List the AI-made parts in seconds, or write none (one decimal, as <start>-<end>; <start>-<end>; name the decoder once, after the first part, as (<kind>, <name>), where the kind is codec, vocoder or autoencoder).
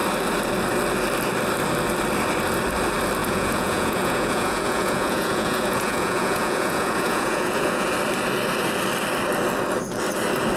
3.2-7.9 (vocoder, Vocos)